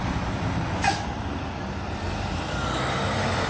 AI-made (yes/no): no